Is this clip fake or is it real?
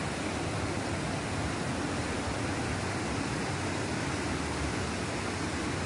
real